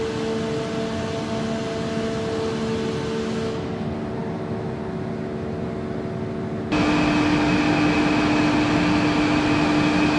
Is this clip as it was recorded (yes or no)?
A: yes